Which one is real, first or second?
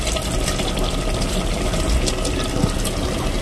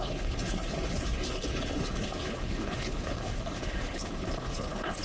first